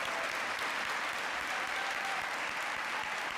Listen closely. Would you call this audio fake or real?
real